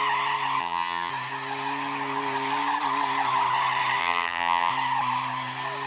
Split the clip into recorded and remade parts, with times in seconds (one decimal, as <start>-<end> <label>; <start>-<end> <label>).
0.0-0.6 recorded; 0.6-1.1 remade; 1.1-4.0 recorded; 4.0-4.7 remade; 4.7-5.9 recorded